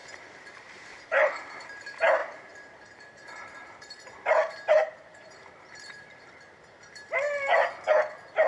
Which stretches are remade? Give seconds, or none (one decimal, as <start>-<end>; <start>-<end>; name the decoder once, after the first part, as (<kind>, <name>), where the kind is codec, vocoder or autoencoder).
0.0-1.8 (vocoder, BigVGAN v2); 2.2-6.3